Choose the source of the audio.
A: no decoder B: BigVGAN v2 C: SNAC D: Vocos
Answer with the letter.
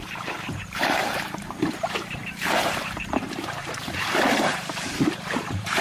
B